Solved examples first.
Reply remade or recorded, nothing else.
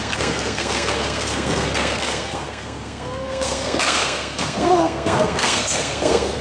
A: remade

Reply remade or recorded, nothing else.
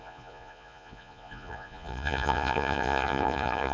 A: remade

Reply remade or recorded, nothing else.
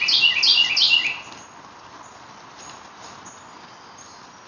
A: recorded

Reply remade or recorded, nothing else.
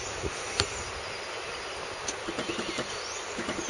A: recorded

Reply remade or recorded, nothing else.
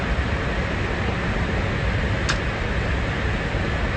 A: recorded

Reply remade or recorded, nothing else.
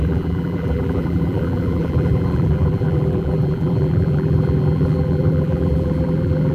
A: remade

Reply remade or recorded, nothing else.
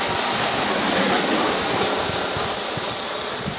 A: recorded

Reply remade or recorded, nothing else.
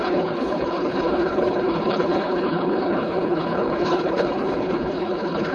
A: remade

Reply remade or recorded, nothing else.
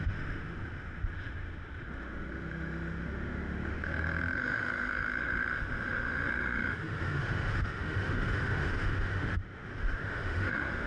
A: remade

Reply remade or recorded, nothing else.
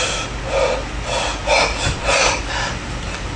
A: recorded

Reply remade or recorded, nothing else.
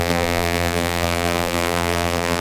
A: remade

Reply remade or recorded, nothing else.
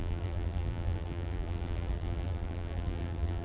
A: remade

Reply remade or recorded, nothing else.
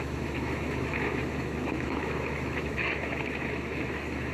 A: remade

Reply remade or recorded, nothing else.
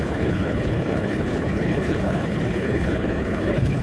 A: remade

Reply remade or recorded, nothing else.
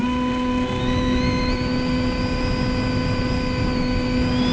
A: recorded